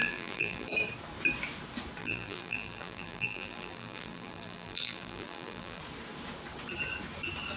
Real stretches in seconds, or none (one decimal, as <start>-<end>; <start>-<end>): 0.7-2.0; 5.8-7.6